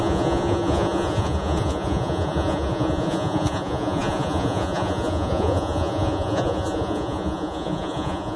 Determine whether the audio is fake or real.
fake